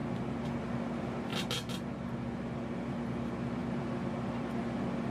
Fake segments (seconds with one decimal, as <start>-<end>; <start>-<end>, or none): none